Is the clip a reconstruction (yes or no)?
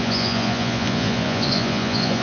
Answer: yes